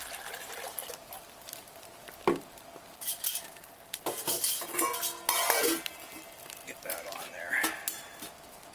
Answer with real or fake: real